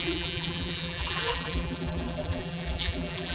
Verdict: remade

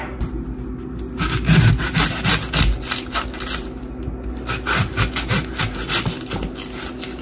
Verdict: recorded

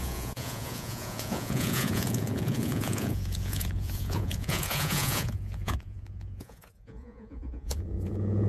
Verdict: remade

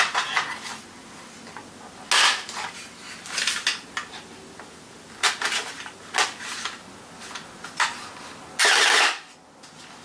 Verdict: recorded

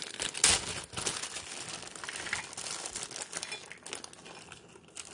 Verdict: recorded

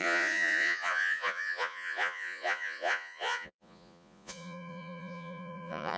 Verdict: remade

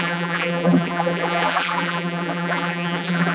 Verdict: remade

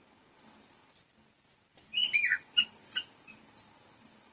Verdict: recorded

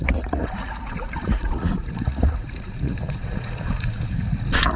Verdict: remade